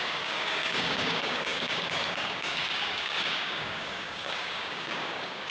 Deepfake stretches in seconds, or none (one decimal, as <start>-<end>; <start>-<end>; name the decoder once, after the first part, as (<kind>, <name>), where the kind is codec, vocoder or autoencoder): 0.0-5.5 (codec, DAC)